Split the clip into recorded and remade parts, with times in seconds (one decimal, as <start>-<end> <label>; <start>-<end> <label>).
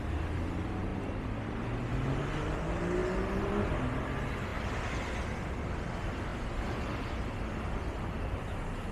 0.0-8.9 recorded